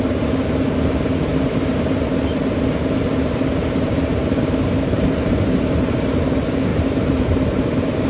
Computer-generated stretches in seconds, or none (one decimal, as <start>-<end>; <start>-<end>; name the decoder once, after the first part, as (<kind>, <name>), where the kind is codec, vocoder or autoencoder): 3.6-6.2 (vocoder, BigVGAN v2); 6.7-7.6